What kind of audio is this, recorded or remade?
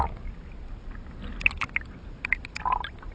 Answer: recorded